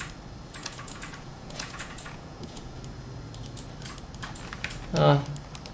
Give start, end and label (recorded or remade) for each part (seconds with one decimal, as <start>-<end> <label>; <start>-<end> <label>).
0.0-0.6 recorded; 0.6-2.8 remade; 2.8-5.7 recorded